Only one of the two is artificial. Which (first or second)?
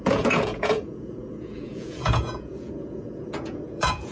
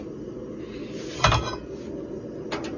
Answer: first